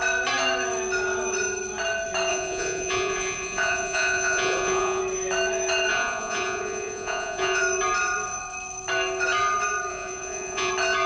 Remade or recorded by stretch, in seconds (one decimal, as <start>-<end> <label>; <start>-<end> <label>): 0.0-2.3 recorded; 2.3-5.0 remade; 5.0-5.9 recorded; 5.9-7.6 remade; 7.6-9.9 recorded; 9.9-10.7 remade; 10.7-11.1 recorded